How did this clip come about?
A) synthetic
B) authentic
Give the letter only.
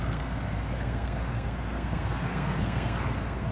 A